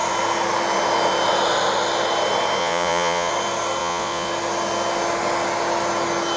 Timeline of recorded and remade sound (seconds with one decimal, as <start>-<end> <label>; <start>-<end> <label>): 0.0-2.6 recorded; 2.6-3.3 remade; 3.3-3.8 recorded; 3.8-4.3 remade; 4.3-6.4 recorded